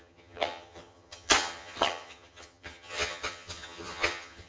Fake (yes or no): yes